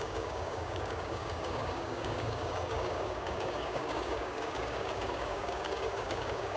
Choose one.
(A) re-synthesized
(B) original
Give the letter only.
A